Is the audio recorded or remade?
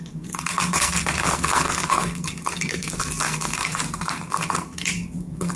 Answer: remade